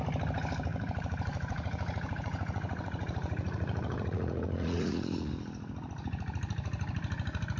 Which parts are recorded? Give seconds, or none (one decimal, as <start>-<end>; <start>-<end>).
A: 0.0-0.7; 5.3-7.6